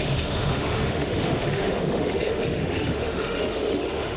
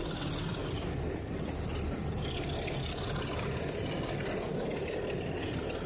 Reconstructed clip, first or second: first